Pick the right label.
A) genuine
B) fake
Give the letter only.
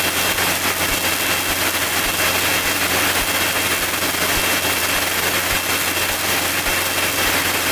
A